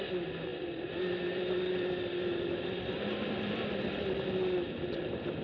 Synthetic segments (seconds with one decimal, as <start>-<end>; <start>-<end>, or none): 0.5-3.7